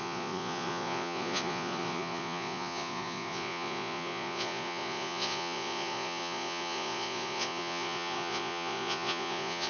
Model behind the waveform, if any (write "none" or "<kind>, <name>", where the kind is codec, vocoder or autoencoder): vocoder, Vocos